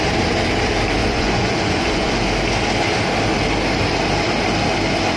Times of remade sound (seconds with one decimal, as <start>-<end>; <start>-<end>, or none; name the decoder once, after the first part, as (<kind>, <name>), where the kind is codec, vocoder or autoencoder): 1.0-2.1 (vocoder, Vocos)

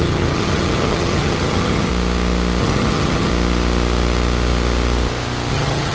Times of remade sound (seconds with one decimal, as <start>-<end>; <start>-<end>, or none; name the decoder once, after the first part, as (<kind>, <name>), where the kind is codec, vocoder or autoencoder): 0.0-1.9 (vocoder, HiFi-GAN); 2.6-3.3; 5.5-5.9

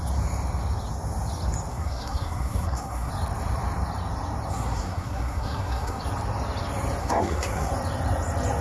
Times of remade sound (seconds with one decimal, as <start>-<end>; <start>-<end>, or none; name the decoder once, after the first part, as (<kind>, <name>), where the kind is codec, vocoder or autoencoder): 1.7-3.1 (codec, SNAC); 4.5-6.0; 7.0-7.7

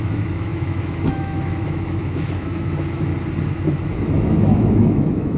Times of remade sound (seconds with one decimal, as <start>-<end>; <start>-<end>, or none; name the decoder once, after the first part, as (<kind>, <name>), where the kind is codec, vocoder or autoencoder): 0.0-3.1 (autoencoder, DAC-VAE); 3.7-5.4

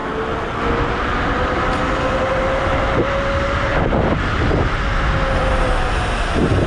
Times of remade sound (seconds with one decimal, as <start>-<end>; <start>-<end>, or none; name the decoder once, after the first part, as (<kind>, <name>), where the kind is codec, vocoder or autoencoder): 3.7-4.3 (vocoder, BigVGAN v2)